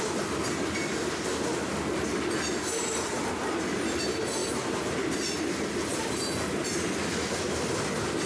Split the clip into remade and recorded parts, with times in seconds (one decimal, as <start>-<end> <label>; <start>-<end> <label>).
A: 0.0-8.3 recorded